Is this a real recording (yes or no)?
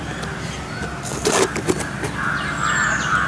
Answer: yes